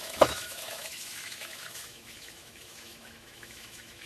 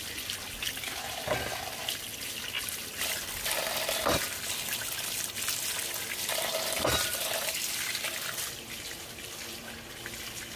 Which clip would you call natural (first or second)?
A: second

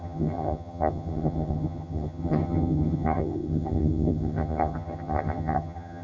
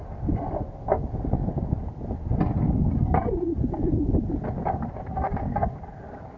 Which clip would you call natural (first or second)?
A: second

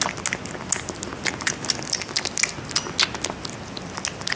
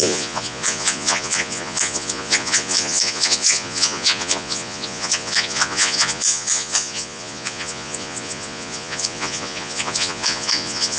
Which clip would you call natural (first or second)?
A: first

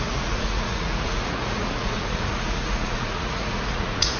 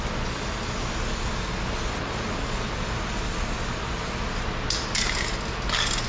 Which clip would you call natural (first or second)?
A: second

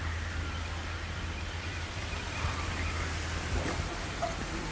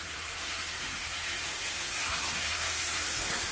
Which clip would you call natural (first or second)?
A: first